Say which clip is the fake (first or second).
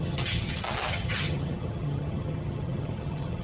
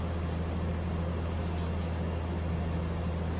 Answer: first